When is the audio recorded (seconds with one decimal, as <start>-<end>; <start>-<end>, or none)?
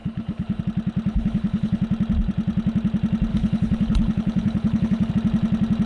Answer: 0.6-1.1; 1.8-3.3; 5.1-5.9